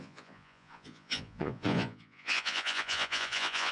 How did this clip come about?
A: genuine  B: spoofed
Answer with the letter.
B